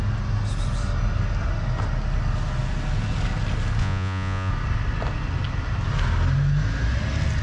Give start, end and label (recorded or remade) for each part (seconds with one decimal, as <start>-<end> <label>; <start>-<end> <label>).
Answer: 0.0-3.8 recorded; 3.8-4.5 remade; 4.5-7.4 recorded